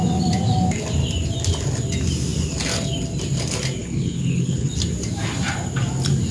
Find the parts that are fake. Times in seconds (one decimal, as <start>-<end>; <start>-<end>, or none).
3.8-4.7